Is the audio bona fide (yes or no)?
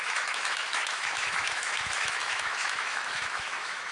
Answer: no